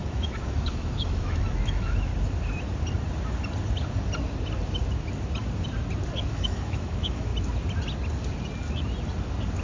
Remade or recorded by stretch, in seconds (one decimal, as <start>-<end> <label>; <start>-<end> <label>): 0.0-2.1 remade; 2.1-6.3 recorded; 6.3-7.3 remade; 7.3-9.6 recorded